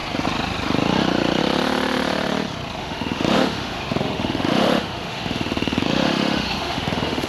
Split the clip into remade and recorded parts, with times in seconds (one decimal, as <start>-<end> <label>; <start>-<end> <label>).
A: 0.0-2.8 recorded; 2.8-7.3 remade